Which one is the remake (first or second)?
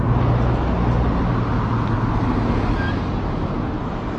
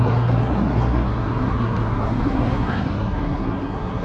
second